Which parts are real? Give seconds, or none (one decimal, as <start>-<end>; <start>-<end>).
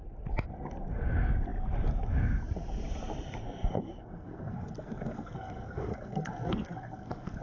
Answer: 0.0-3.4